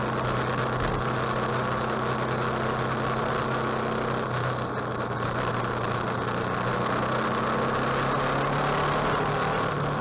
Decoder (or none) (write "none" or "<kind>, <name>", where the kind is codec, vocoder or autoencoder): none